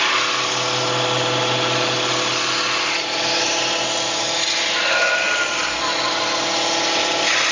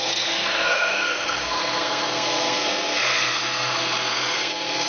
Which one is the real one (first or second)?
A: first